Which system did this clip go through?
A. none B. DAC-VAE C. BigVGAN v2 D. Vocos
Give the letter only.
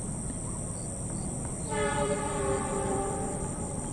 C